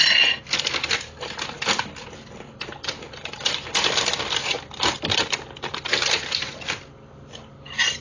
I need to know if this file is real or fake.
real